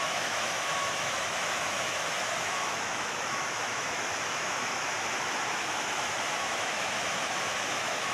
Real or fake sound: fake